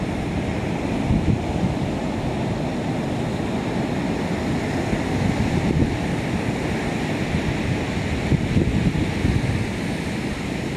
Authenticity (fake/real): real